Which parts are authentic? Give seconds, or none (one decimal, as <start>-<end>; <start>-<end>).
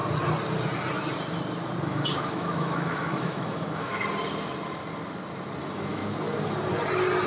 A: 0.0-1.8; 3.9-5.6; 6.0-7.3